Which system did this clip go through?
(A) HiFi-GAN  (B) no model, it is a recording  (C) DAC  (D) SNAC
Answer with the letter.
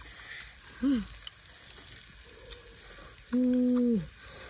B